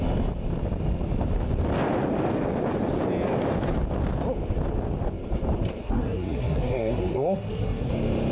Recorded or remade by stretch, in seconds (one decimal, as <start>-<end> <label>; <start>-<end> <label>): 0.0-5.8 recorded; 5.8-7.9 remade; 7.9-8.3 recorded

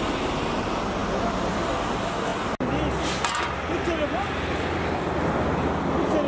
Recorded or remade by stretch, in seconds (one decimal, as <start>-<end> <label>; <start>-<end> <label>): 0.0-1.0 recorded; 1.0-1.7 remade; 1.7-2.3 recorded; 2.3-2.9 remade; 2.9-6.3 recorded